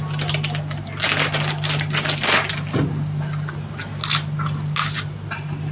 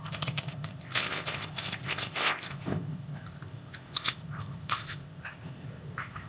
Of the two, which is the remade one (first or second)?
second